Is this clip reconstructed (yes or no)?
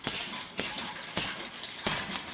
no